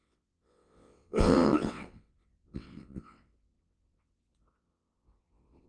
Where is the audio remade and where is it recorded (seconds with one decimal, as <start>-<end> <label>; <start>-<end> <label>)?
0.0-5.7 remade